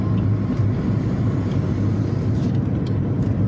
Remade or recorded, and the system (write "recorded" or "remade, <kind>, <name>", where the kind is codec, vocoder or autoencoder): recorded